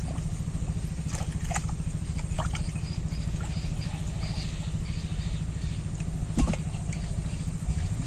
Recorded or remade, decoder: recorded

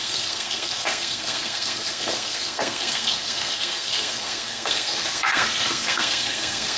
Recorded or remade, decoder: remade, codec, SNAC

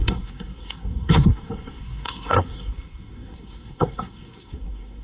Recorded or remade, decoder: remade, codec, SNAC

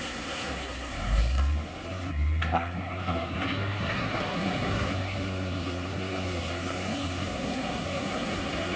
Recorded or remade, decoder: remade, codec, SNAC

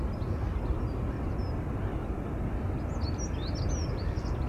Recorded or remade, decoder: recorded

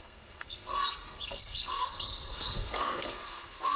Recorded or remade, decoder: remade, codec, SNAC